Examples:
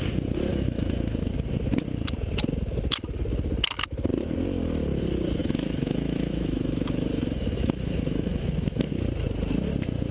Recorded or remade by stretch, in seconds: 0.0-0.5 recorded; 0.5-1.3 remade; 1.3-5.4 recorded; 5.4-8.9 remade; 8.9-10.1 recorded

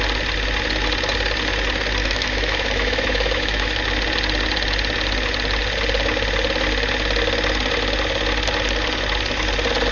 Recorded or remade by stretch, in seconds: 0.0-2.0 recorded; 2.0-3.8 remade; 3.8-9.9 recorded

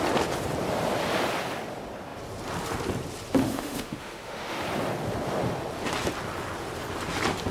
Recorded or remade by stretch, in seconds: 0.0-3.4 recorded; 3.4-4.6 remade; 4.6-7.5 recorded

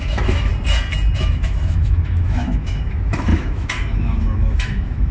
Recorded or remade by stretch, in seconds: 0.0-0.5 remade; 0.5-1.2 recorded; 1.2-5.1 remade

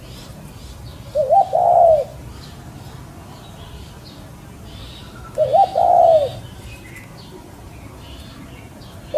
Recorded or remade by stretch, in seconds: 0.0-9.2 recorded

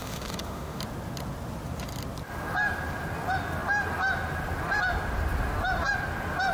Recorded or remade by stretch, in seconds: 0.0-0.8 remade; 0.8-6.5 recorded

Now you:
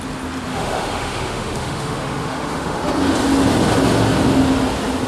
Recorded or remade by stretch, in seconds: 0.0-0.5 recorded; 0.5-2.8 remade; 2.8-5.1 recorded

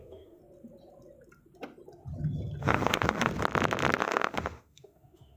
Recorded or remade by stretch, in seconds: 0.0-0.4 remade; 0.4-2.6 recorded; 2.6-3.3 remade; 3.3-4.0 recorded; 4.0-5.4 remade